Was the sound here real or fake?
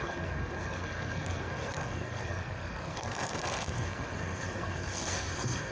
fake